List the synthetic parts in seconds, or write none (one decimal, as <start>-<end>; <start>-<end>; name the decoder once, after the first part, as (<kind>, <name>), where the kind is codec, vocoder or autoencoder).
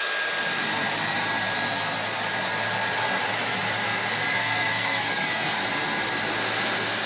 4.4-5.6 (codec, SNAC)